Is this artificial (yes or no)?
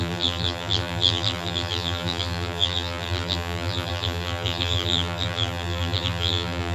yes